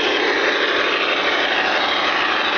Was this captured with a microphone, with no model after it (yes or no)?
yes